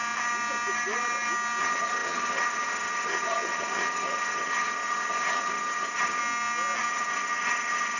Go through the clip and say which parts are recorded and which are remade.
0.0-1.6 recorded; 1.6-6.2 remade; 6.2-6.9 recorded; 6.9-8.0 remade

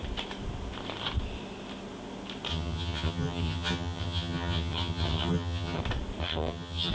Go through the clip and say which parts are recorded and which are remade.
0.0-2.5 recorded; 2.5-5.8 remade; 5.8-6.2 recorded; 6.2-6.9 remade

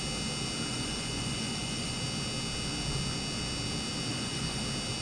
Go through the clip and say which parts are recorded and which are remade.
0.0-0.7 recorded; 0.7-2.0 remade; 2.0-4.1 recorded; 4.1-4.6 remade; 4.6-5.0 recorded